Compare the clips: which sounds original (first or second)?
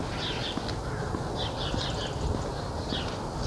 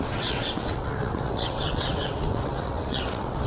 first